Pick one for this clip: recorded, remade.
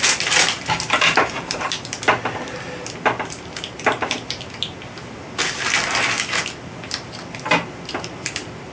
recorded